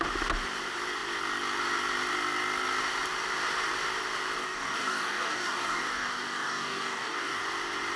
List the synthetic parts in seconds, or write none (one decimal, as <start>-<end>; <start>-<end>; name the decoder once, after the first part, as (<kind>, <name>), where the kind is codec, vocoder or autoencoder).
4.4-7.4 (codec, DAC)